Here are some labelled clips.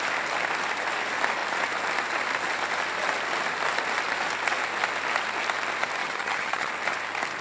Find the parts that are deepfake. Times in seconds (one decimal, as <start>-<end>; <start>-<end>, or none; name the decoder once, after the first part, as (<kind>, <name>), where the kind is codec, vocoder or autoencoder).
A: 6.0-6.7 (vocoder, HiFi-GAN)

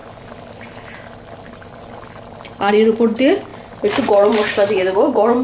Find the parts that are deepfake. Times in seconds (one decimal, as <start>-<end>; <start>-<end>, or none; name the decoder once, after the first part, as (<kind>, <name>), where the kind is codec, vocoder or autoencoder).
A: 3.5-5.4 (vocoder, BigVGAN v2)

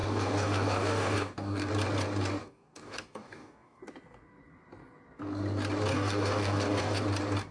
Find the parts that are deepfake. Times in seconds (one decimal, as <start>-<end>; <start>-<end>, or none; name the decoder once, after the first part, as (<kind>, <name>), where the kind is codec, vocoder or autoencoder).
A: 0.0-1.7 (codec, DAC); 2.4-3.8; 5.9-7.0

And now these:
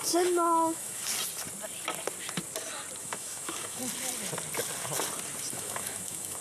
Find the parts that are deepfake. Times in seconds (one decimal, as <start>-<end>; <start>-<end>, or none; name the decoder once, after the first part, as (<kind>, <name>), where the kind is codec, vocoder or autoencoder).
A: 0.0-1.0 (autoencoder, DAC-VAE); 3.0-3.8; 5.5-6.4

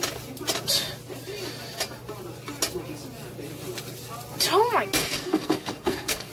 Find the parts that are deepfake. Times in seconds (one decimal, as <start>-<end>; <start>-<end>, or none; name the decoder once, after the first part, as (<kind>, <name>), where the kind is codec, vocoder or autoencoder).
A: 5.0-6.3 (codec, SNAC)

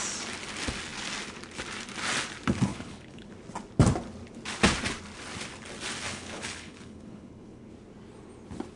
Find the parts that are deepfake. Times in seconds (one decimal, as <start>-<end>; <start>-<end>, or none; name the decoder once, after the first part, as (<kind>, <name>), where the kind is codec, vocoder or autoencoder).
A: 2.7-3.3 (codec, HILCodec); 6.1-7.7